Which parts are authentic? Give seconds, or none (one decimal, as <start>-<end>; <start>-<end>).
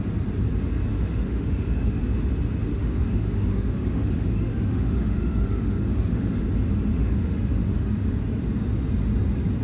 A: 0.0-0.9; 2.0-2.7; 6.4-6.9; 8.2-9.6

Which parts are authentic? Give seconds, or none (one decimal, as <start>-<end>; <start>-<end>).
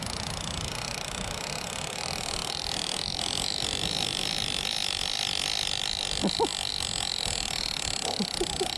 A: 0.0-8.8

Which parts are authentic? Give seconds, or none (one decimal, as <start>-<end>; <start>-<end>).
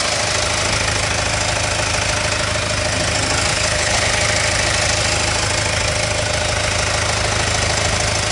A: 0.0-3.5; 4.1-8.3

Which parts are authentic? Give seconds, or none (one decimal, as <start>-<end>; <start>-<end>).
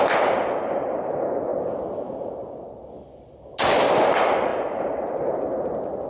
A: 0.0-6.1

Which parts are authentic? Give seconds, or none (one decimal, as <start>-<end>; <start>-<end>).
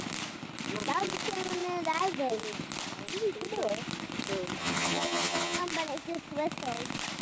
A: 0.0-4.6; 5.6-7.2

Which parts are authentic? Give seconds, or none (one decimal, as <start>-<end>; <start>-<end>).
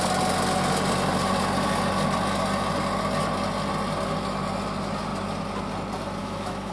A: 0.0-6.2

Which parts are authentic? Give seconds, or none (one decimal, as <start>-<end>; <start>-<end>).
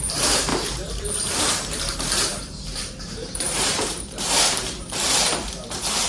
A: none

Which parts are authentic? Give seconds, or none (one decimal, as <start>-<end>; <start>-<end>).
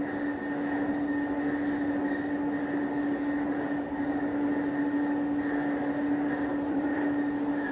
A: 0.0-6.5; 7.0-7.7